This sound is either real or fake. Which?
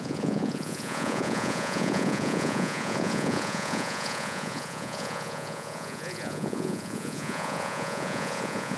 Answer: fake